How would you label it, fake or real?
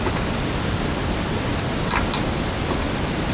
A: real